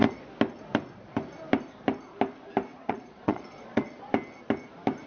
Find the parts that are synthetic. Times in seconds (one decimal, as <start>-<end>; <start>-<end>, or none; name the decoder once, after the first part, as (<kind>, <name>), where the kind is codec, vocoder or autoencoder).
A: 2.7-4.0 (vocoder, Vocos)